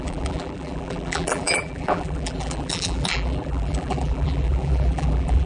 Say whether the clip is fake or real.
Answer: fake